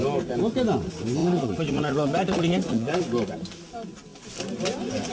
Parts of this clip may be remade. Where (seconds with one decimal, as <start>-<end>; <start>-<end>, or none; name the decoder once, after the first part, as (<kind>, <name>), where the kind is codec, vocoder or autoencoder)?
1.2-3.0 (vocoder, Vocos)